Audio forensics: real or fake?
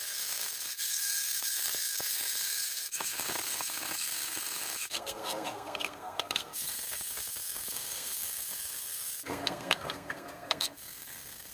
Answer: fake